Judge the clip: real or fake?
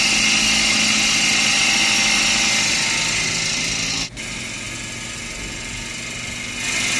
real